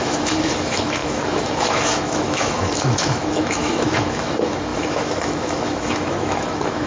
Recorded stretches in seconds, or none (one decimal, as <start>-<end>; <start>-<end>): none